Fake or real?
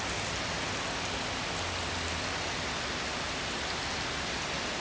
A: real